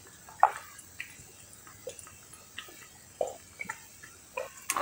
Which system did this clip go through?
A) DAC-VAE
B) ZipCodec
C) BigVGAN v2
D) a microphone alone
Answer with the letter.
D